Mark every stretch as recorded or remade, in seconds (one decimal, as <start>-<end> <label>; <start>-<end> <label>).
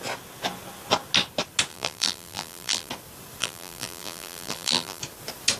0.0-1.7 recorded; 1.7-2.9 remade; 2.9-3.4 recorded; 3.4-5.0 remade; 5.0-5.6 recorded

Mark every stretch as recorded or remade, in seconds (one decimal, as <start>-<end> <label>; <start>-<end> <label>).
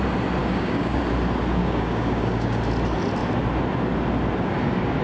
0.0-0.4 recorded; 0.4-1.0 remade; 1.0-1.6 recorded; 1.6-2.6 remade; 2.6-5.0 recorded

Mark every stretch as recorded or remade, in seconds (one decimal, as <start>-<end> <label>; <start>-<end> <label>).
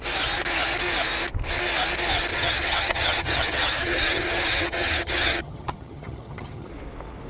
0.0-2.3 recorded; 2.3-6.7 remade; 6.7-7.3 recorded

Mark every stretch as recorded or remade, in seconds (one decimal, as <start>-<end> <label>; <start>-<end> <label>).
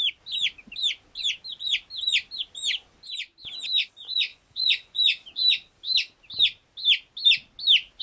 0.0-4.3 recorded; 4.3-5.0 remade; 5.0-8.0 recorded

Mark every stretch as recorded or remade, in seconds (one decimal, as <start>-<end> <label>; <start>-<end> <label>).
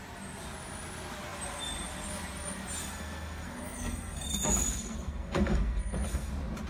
0.0-2.8 recorded; 2.8-6.3 remade; 6.3-6.7 recorded